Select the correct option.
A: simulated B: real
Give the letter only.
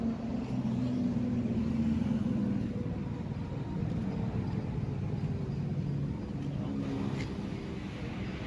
B